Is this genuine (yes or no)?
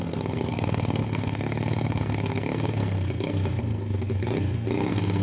no